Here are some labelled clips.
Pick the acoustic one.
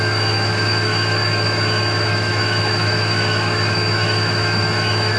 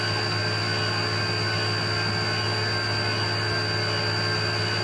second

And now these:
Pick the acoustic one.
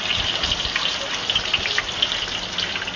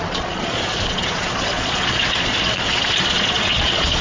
first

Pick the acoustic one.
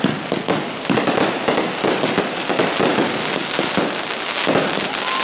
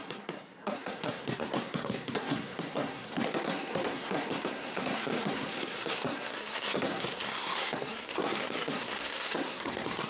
first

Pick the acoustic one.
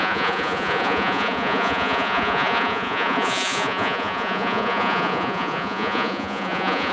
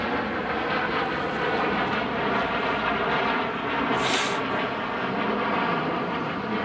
second